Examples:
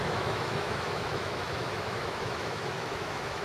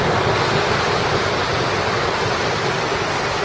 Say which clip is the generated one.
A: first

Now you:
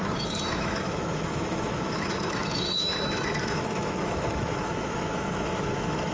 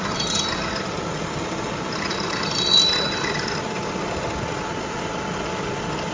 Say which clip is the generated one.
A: first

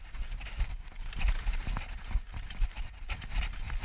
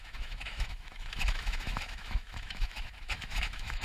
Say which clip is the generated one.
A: second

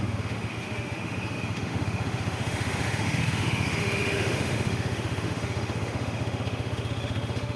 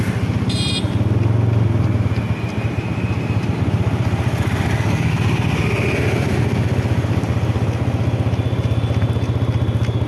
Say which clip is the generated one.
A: first